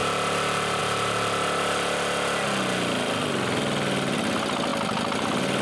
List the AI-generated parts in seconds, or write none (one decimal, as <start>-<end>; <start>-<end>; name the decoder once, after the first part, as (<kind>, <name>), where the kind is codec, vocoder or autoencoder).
none